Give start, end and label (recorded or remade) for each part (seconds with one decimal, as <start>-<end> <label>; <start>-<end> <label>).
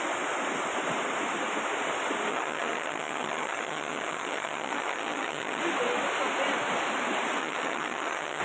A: 0.0-2.3 recorded; 2.3-5.6 remade; 5.6-7.4 recorded; 7.4-8.4 remade